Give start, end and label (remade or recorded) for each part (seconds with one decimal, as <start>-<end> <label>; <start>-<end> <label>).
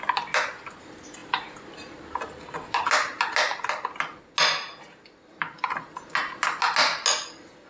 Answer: 0.0-7.7 recorded